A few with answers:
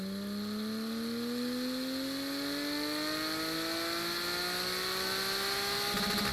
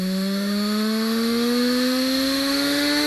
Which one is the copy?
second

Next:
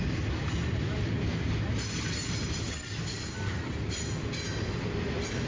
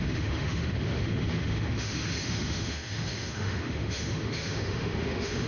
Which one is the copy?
second